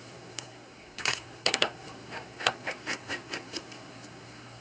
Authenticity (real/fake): fake